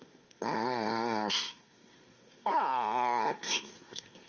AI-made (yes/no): yes